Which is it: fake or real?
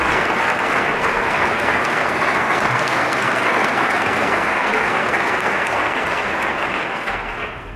fake